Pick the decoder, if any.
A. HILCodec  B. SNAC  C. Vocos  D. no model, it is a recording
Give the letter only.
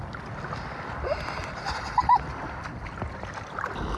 D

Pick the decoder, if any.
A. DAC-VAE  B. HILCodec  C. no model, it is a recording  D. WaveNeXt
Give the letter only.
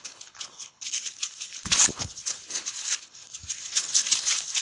B